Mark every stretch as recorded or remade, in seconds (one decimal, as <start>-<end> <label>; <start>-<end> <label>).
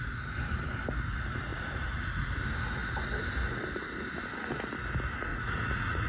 0.0-1.5 recorded; 1.5-2.3 remade; 2.3-5.3 recorded; 5.3-6.1 remade